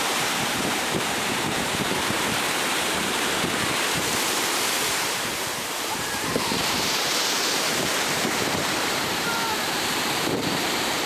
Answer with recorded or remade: remade